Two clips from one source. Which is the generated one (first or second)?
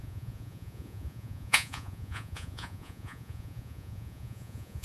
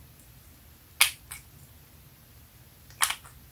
first